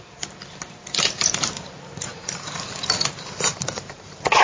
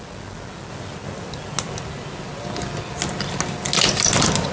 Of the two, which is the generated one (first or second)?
first